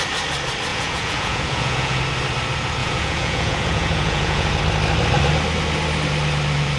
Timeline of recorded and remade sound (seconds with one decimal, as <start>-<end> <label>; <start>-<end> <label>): 0.0-0.7 recorded; 0.7-2.0 remade; 2.0-2.8 recorded; 2.8-4.6 remade; 4.6-6.8 recorded